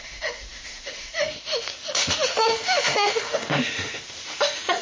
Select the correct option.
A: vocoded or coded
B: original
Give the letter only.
A